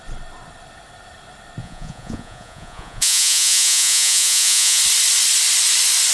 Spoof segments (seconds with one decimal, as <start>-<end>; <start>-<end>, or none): 1.6-4.8